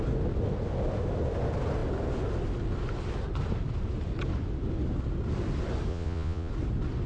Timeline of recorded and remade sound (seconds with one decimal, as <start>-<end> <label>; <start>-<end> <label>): 0.0-5.9 recorded; 5.9-6.5 remade; 6.5-7.1 recorded